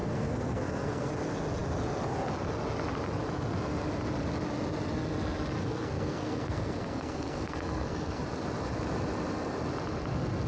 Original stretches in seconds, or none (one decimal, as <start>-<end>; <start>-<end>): 1.1-5.6; 8.2-10.5